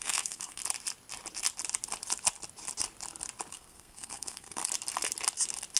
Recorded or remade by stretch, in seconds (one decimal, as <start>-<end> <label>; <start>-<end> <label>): 0.0-0.6 remade; 0.6-3.5 recorded; 3.5-4.6 remade; 4.6-5.8 recorded